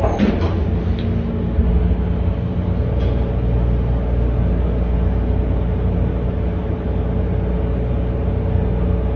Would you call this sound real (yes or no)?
yes